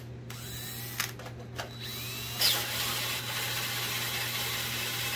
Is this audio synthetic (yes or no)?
no